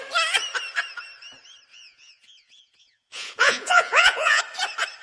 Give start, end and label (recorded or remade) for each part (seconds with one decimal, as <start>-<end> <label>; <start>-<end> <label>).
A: 0.0-1.7 recorded; 1.7-4.4 remade; 4.4-5.0 recorded